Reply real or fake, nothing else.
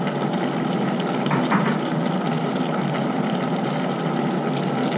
real